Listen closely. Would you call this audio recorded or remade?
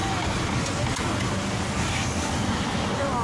recorded